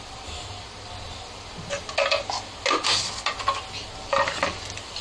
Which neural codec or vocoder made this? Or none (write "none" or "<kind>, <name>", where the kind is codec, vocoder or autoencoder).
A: none